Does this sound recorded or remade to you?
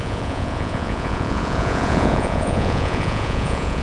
remade